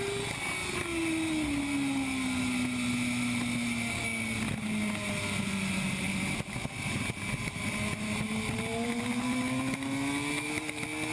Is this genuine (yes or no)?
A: yes